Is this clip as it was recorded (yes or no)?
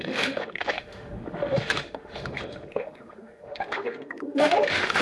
no